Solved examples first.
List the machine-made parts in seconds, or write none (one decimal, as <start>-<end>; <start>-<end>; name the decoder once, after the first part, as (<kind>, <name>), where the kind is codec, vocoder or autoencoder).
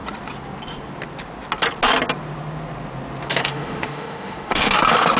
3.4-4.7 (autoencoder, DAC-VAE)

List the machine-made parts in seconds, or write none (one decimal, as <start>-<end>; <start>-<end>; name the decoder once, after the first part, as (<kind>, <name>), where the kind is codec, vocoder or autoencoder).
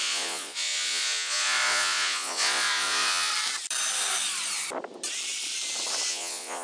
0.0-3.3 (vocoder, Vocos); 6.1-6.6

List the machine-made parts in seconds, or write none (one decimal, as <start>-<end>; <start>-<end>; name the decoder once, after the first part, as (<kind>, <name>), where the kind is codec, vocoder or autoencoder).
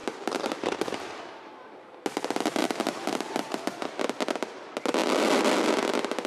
0.0-0.8 (vocoder, BigVGAN v2); 2.6-3.3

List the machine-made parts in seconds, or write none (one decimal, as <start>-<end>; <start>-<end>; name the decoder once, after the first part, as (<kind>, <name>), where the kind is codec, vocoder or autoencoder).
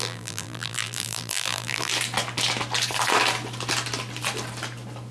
0.0-1.9 (vocoder, BigVGAN v2)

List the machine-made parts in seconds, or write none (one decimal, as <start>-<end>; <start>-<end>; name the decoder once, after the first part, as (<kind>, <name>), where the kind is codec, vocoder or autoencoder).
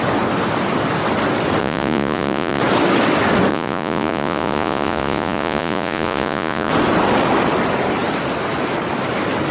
1.6-2.6 (vocoder, Vocos); 3.5-6.7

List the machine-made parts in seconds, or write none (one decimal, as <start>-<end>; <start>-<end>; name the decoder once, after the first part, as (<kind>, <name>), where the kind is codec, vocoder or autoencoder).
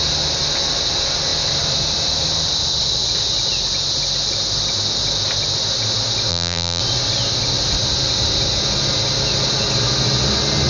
6.3-6.8 (vocoder, BigVGAN v2)